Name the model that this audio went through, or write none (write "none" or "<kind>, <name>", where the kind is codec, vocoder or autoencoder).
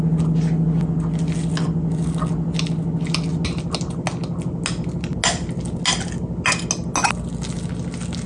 none